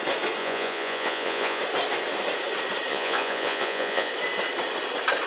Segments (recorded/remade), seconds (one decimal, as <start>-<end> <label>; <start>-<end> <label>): 0.0-0.4 recorded; 0.4-1.6 remade; 1.6-2.9 recorded; 2.9-4.1 remade; 4.1-5.3 recorded